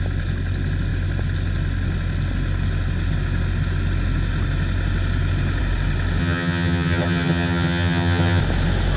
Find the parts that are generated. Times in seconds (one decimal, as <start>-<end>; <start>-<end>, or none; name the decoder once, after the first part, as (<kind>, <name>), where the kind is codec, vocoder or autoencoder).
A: 6.2-8.4 (vocoder, HiFi-GAN)